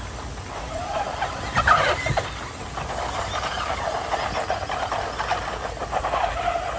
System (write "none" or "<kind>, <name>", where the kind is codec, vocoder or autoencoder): none